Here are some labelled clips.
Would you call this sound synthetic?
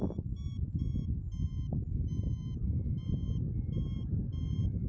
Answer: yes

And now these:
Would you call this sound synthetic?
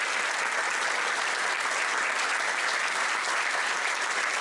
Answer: no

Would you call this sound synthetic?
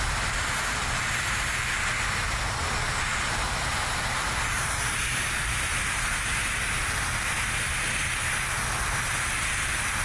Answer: no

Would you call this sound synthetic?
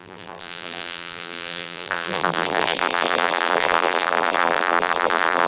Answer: yes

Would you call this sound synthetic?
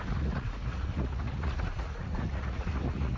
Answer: yes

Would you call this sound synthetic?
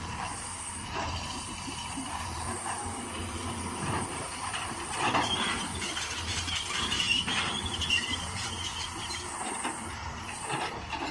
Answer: yes